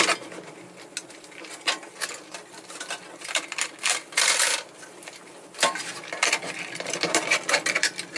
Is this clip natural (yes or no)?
yes